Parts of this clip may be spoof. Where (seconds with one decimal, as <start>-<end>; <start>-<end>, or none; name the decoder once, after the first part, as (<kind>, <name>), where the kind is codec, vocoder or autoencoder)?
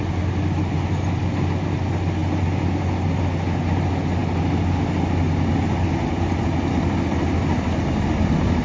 none